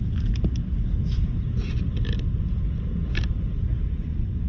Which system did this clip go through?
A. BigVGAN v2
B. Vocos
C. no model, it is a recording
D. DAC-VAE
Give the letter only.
C